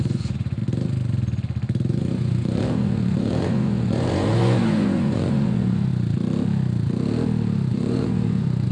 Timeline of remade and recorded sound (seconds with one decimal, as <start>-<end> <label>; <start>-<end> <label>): 0.0-0.6 remade; 0.6-1.9 recorded; 1.9-5.9 remade; 5.9-7.7 recorded; 7.7-8.7 remade